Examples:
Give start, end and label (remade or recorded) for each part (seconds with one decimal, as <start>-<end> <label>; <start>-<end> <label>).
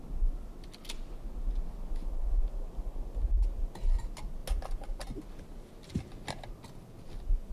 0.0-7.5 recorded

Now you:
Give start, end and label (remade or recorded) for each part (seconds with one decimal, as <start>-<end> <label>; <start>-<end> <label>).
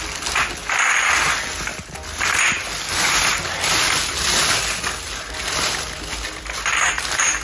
0.0-7.4 recorded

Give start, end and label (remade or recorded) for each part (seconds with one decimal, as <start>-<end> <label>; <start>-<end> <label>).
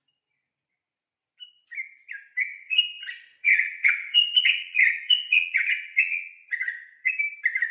0.0-2.5 recorded; 2.5-7.1 remade; 7.1-7.7 recorded